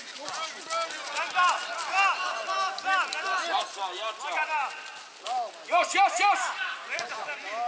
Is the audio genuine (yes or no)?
yes